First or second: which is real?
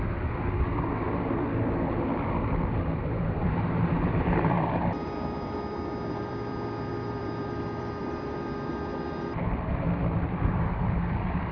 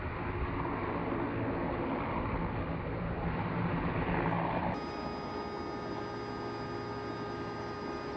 second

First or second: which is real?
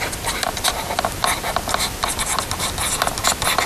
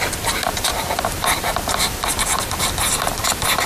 first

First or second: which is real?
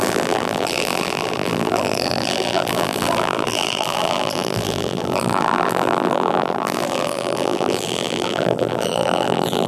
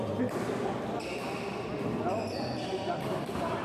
second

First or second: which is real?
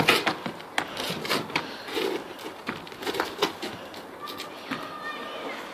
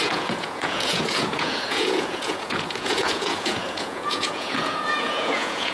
first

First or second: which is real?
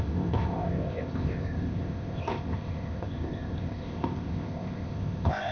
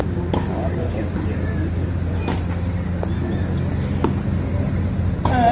second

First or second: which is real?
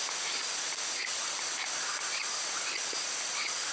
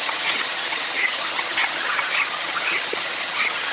first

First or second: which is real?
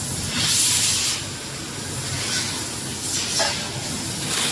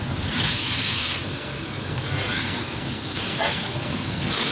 first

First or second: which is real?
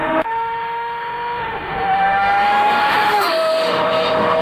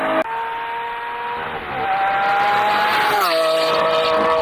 second